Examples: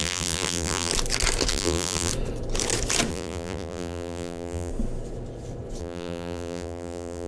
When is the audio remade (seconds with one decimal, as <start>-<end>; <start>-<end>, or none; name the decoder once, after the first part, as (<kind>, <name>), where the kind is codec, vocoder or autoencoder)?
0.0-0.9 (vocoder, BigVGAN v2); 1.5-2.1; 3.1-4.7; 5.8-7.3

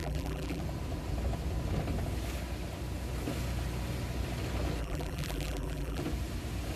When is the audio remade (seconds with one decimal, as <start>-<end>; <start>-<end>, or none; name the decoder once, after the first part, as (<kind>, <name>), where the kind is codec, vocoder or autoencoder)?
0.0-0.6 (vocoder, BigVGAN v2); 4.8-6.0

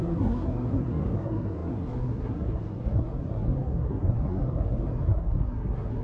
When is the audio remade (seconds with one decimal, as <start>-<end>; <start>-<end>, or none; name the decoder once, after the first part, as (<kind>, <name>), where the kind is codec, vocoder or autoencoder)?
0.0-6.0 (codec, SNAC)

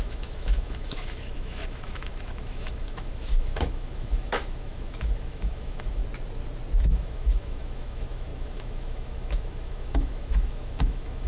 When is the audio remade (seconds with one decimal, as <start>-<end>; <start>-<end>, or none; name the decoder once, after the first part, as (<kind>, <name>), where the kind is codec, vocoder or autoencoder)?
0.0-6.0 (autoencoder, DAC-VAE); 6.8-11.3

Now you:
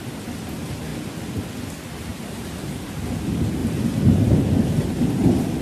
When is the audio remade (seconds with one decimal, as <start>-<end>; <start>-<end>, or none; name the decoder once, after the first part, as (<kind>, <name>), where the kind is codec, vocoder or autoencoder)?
2.1-3.1 (vocoder, BigVGAN v2); 3.6-4.3